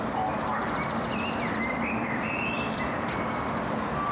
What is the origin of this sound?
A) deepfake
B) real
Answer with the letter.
B